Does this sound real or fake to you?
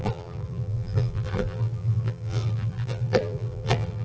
fake